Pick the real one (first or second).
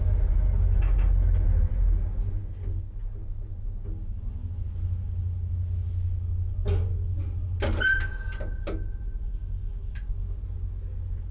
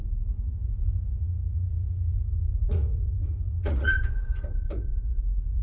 first